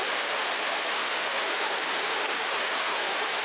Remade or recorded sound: remade